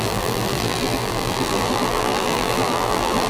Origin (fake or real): fake